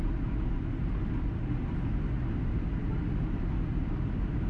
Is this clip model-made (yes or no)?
no